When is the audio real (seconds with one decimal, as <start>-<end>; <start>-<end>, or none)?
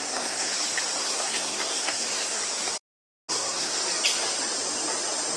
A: 0.5-1.0; 2.4-3.3; 3.8-5.4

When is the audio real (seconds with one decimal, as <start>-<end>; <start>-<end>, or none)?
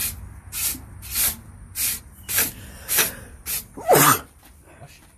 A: 0.0-5.2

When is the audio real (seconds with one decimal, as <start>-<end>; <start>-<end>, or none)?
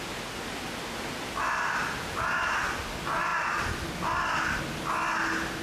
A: 0.0-5.6